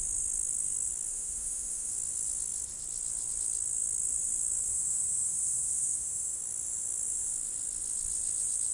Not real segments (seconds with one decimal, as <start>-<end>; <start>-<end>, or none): 1.1-1.9; 4.7-6.4